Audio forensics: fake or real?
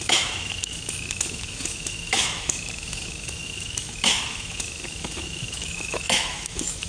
fake